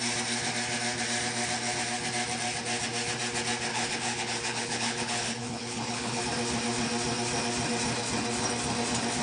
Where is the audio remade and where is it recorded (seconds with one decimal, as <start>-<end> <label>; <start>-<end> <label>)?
0.0-3.7 recorded; 3.7-6.2 remade; 6.2-9.2 recorded